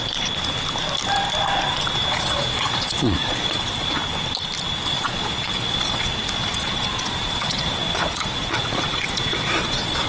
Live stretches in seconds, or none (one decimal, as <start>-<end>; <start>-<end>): 0.0-2.1; 4.0-4.9